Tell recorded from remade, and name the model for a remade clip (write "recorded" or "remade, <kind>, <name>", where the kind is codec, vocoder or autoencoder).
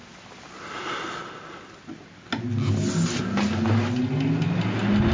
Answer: recorded